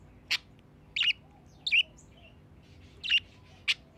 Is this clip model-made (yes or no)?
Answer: no